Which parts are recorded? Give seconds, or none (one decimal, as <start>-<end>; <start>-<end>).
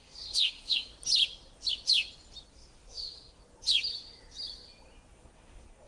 0.9-2.5; 3.4-5.1